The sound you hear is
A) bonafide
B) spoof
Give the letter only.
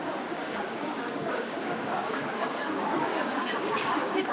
B